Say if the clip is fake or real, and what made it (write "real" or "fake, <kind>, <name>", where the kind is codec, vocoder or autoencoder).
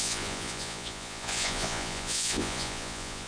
fake, vocoder, Vocos